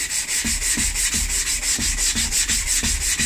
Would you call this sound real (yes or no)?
yes